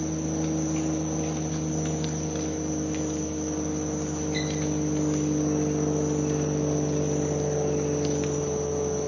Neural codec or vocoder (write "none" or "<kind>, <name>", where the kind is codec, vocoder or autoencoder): none